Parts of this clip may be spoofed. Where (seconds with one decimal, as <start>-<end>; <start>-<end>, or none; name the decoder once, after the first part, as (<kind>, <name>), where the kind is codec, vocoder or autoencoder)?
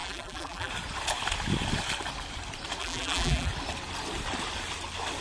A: 0.0-0.7 (vocoder, BigVGAN v2); 2.8-3.5